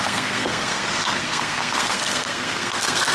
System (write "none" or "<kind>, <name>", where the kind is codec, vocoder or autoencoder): codec, SNAC